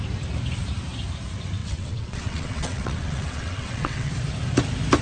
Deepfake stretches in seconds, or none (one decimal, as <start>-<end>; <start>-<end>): 1.6-4.1

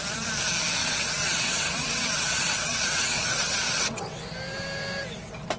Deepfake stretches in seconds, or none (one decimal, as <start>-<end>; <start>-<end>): 0.8-4.2

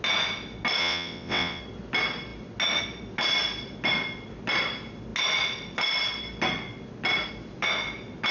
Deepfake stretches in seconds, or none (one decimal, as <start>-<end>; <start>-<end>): 0.8-1.6

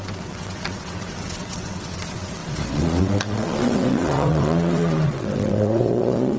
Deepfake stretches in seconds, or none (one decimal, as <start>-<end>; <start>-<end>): 0.0-6.4

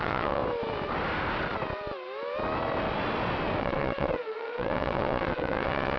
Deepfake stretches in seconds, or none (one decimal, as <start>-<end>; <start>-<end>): 0.0-0.4; 3.6-6.0

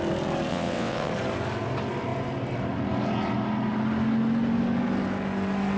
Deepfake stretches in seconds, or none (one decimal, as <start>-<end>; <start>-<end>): 0.5-1.1

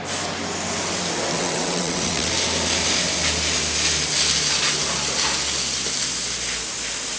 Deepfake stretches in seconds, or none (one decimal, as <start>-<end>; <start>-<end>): 1.3-2.3